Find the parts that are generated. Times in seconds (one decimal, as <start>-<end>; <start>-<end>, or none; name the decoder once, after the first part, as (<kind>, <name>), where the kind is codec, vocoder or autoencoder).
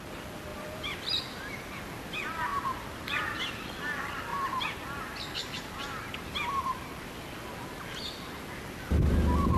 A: 0.5-1.0 (vocoder, BigVGAN v2); 2.5-3.5; 4.3-5.0; 5.4-6.1